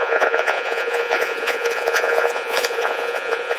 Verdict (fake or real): fake